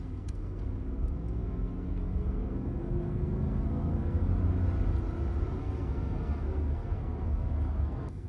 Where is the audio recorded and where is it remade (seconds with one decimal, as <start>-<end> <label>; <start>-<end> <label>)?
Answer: 0.0-4.3 remade; 4.3-5.6 recorded; 5.6-8.3 remade